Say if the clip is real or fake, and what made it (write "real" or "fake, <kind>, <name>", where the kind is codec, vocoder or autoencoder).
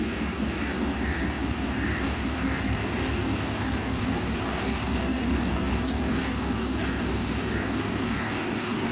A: fake, codec, DAC